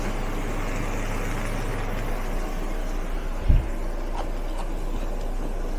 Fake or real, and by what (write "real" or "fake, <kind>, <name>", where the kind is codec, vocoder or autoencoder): real